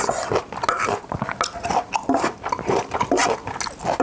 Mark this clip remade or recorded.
recorded